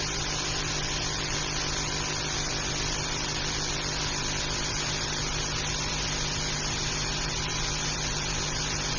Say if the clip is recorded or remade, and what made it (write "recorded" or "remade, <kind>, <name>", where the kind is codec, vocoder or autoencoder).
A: remade, vocoder, BigVGAN v2